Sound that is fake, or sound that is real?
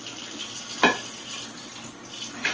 real